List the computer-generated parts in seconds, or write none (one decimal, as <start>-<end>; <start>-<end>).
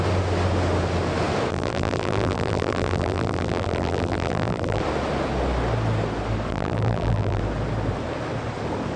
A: 1.5-4.8; 6.5-7.4